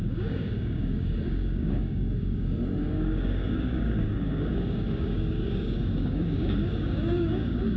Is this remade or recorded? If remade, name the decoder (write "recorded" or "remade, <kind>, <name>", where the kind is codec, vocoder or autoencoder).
remade, codec, DAC